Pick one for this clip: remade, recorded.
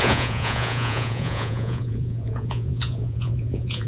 remade